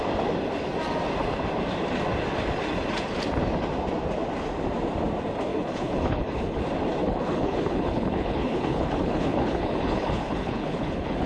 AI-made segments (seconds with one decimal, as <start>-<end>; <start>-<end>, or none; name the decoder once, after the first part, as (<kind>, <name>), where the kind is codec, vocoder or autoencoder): 5.5-6.6 (codec, HILCodec); 7.0-11.3